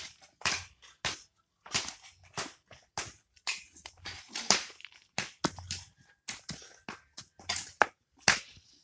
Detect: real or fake real